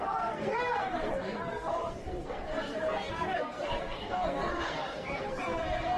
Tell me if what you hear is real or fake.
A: fake